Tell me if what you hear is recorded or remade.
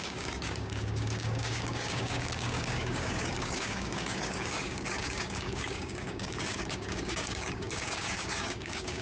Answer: remade